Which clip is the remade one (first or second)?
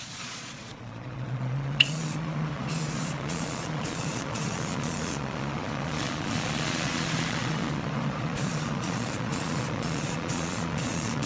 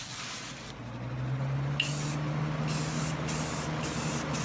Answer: first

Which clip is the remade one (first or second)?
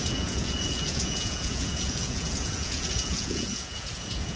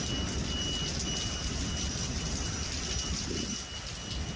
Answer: first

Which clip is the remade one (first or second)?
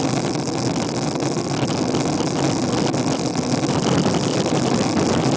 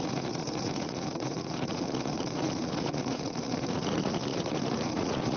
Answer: second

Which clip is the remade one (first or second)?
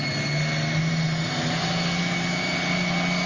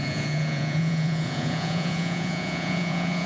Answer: second